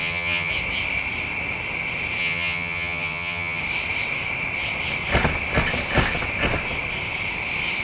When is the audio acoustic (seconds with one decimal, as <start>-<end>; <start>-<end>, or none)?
0.5-2.2; 3.6-7.8